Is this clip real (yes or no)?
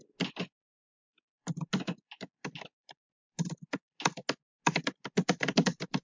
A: yes